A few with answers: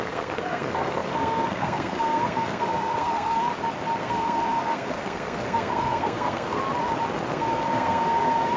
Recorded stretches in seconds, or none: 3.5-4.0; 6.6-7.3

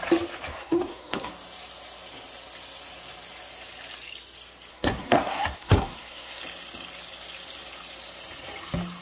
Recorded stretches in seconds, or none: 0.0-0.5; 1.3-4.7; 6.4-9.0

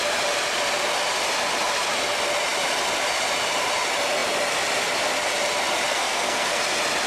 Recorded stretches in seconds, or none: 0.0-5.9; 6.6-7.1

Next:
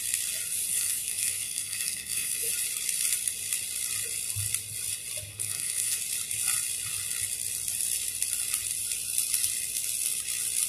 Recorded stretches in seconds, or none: 0.0-0.7; 2.5-5.3; 6.0-10.7

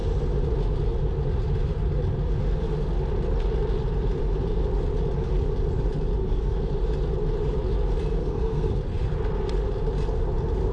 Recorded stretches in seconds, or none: 0.0-6.2; 6.7-8.2; 8.8-10.7

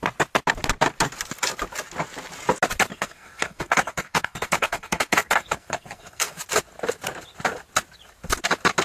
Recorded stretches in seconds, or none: 0.0-2.9; 6.4-8.8